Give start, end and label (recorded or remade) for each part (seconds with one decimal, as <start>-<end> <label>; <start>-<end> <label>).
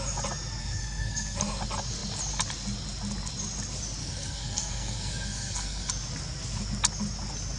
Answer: 0.0-0.6 recorded; 0.6-1.4 remade; 1.4-4.0 recorded; 4.0-5.9 remade; 5.9-7.6 recorded